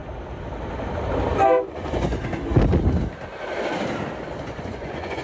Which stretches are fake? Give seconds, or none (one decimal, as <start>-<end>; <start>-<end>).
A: 1.7-2.2; 4.4-5.2